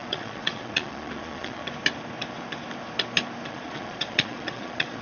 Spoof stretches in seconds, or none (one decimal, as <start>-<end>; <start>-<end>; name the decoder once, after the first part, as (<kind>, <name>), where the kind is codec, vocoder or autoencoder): 0.0-1.6 (vocoder, Vocos); 3.5-5.0